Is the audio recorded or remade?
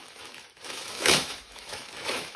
remade